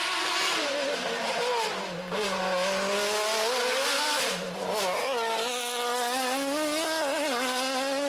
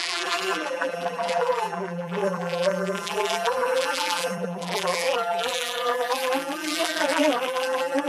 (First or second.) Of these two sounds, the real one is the first